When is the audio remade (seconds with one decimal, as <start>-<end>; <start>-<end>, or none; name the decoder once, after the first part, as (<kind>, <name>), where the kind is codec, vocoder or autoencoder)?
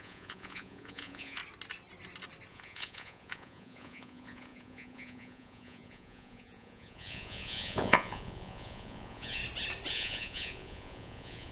0.0-1.4 (vocoder, Vocos); 2.5-9.4; 9.9-11.5